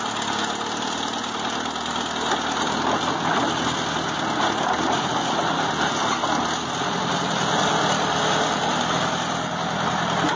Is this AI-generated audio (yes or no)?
no